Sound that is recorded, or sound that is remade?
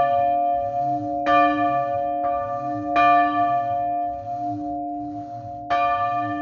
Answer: recorded